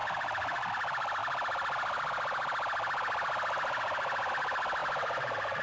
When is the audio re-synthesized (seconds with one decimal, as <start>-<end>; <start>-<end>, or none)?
0.0-0.7; 4.8-5.6